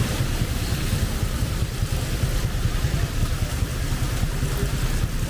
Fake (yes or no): no